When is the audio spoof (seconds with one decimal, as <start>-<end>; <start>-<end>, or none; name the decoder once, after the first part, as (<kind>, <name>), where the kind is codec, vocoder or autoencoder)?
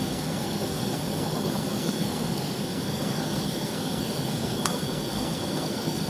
0.0-6.1 (codec, SNAC)